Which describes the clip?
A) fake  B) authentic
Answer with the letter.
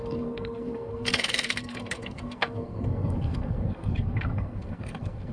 A